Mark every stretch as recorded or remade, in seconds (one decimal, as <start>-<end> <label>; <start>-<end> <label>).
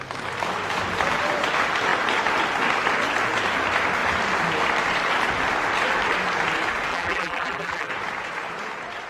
0.0-6.9 recorded; 6.9-7.9 remade; 7.9-9.1 recorded